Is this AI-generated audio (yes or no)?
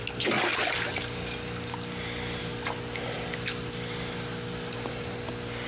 no